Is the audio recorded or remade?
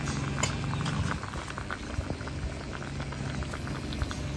recorded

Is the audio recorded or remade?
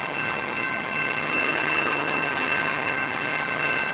remade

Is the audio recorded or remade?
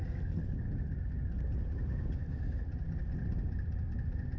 recorded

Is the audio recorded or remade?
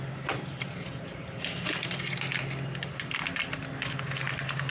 recorded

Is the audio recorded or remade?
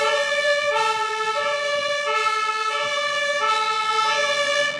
remade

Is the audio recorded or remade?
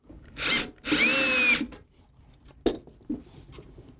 recorded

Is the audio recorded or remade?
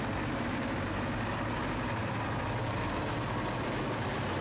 recorded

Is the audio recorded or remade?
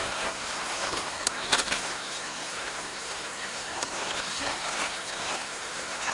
remade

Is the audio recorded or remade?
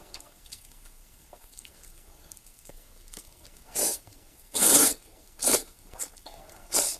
remade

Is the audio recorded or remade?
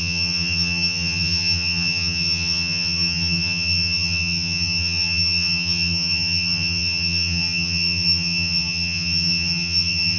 remade